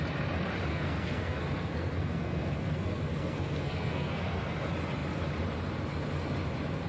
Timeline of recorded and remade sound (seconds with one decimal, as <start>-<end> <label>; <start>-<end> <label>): 0.0-0.7 recorded; 0.7-4.5 remade; 4.5-6.9 recorded